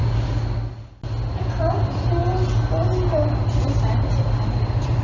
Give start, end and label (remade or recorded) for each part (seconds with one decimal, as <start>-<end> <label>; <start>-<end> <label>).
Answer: 0.0-1.8 recorded; 1.8-2.2 remade; 2.2-3.2 recorded; 3.2-5.0 remade